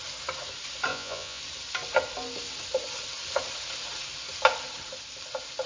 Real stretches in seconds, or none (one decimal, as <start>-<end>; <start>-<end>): 0.0-0.9; 1.4-5.7